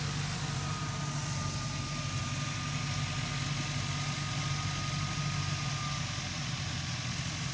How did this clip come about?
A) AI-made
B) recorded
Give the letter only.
B